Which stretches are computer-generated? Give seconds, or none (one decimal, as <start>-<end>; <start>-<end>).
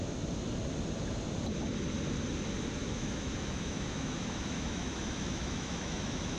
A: 2.8-6.4